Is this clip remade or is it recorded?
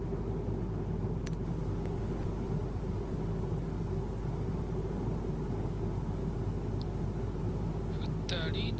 recorded